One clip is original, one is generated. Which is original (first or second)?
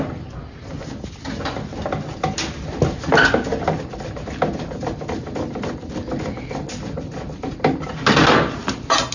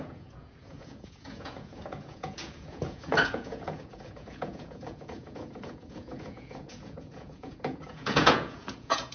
first